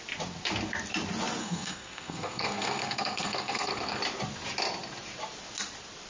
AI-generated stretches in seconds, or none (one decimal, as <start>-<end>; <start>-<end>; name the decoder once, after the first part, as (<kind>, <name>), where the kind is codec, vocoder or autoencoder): 1.4-4.0 (codec, SNAC)